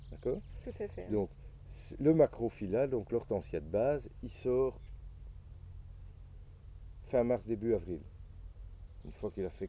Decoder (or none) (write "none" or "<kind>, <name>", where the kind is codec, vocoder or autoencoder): none